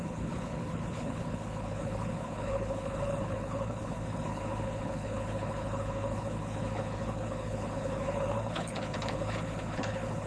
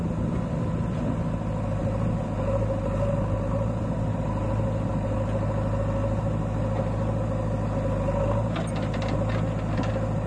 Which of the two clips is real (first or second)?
second